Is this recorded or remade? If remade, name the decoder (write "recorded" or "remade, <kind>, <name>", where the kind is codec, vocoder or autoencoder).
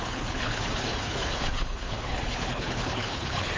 remade, codec, HILCodec